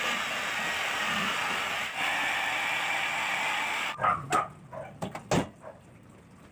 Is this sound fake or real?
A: real